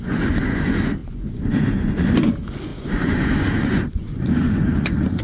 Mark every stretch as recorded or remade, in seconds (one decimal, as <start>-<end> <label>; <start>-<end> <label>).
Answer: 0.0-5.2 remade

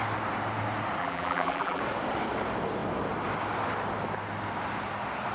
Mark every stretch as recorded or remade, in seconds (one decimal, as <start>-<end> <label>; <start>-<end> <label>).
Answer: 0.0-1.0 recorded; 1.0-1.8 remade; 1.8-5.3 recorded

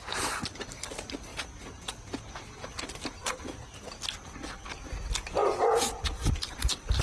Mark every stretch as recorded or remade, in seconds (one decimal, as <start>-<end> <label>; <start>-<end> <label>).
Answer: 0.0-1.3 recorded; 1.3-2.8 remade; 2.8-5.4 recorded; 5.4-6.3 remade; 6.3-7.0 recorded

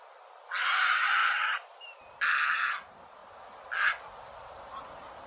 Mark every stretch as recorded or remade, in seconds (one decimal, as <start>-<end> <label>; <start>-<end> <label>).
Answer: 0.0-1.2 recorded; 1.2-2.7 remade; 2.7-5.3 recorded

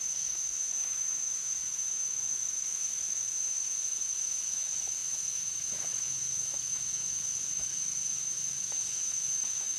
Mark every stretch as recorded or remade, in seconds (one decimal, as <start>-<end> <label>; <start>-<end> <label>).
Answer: 0.0-9.8 remade

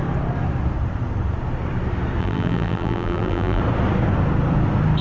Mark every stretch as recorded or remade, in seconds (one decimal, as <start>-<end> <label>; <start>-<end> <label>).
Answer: 0.0-2.2 recorded; 2.2-3.6 remade; 3.6-5.0 recorded